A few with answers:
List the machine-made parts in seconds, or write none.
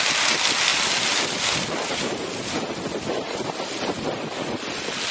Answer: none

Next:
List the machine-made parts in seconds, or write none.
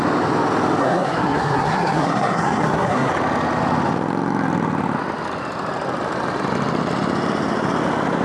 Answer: 0.8-3.1 (codec, SNAC)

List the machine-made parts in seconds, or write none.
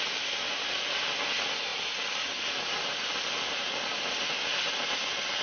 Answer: none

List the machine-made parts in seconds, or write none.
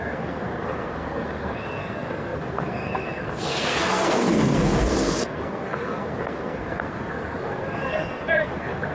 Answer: 0.0-8.9 (codec, SNAC)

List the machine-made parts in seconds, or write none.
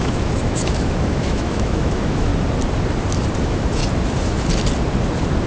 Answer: 0.0-2.3 (autoencoder, DAC-VAE); 3.4-3.8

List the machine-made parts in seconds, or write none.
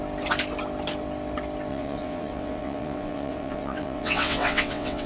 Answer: 1.7-5.1 (vocoder, WaveNeXt)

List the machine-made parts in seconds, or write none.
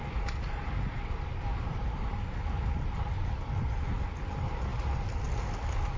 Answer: 1.5-3.8 (vocoder, BigVGAN v2)